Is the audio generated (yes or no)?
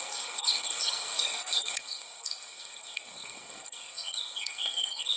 yes